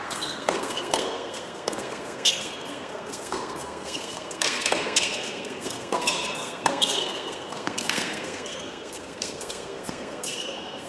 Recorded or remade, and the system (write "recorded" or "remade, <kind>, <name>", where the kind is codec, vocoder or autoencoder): remade, codec, SNAC